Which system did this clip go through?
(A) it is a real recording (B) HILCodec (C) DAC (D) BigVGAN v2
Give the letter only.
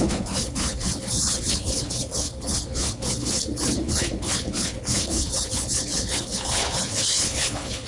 B